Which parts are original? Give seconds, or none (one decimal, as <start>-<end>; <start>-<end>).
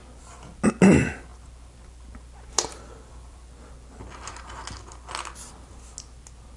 0.0-6.6